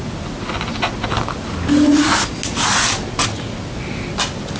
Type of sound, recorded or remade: recorded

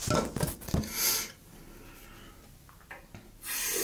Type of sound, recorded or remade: recorded